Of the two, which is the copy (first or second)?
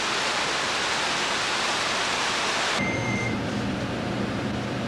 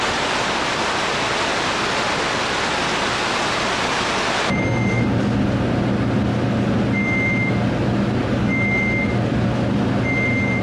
first